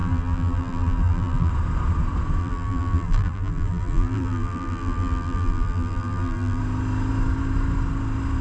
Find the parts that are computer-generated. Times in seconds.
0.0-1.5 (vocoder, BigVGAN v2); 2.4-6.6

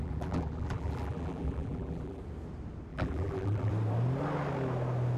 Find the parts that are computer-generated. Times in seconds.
0.0-2.2 (vocoder, BigVGAN v2); 2.9-3.7